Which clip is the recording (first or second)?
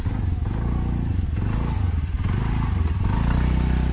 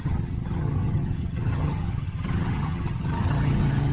first